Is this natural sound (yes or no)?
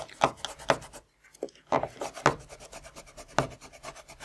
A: yes